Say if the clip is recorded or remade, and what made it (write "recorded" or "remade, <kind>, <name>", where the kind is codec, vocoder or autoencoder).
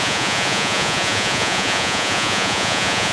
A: remade, vocoder, Vocos